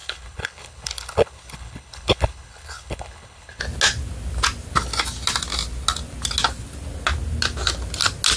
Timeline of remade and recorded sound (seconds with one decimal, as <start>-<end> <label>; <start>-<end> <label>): 0.0-3.6 remade; 3.6-8.4 recorded